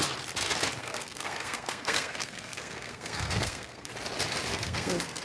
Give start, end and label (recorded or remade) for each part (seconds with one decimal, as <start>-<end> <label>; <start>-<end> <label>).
0.0-0.8 recorded; 0.8-3.9 remade; 3.9-4.5 recorded; 4.5-5.2 remade